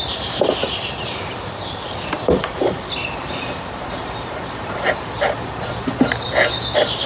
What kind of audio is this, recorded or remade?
recorded